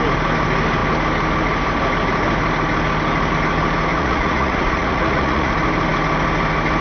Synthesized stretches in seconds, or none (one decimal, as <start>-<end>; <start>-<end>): 3.9-5.5